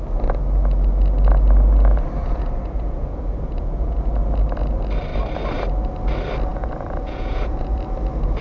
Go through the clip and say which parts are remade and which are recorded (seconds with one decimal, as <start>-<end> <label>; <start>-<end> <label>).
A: 0.0-2.2 recorded; 2.2-4.0 remade; 4.0-6.5 recorded; 6.5-7.8 remade; 7.8-8.4 recorded